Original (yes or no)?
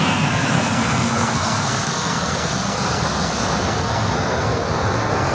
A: no